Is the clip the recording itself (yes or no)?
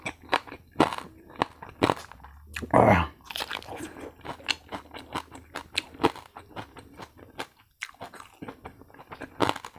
yes